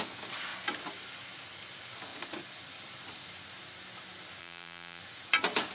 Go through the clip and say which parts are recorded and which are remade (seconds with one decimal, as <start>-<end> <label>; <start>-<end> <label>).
0.0-4.4 recorded; 4.4-5.0 remade; 5.0-5.7 recorded